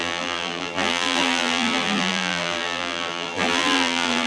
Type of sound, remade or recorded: remade